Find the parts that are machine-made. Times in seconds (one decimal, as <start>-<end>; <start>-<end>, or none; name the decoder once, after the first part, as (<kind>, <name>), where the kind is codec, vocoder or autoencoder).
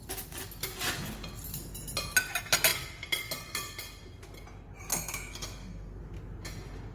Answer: 4.9-6.0 (codec, SNAC)